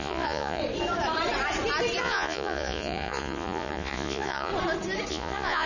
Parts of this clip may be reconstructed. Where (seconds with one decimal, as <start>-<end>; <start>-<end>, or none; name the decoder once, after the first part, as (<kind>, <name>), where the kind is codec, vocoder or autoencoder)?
0.0-0.6 (vocoder, Vocos); 2.0-4.5; 5.1-5.7